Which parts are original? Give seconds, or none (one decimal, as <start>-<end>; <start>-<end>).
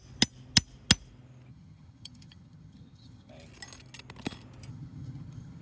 0.0-1.5; 3.3-4.7